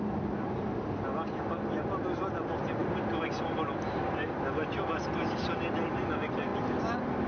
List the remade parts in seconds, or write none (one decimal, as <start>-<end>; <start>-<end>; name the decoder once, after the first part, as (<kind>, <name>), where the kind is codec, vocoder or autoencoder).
6.5-7.3 (vocoder, BigVGAN v2)